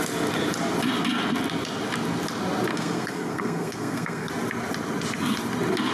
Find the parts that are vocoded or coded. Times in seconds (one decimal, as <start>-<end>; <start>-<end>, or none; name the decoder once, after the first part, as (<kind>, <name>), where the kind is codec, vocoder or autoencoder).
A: 2.7-4.3 (codec, SNAC)